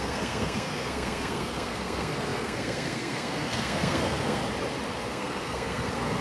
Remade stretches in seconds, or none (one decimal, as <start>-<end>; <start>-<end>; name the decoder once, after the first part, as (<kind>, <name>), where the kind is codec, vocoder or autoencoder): 0.0-4.4 (codec, SNAC); 5.0-6.2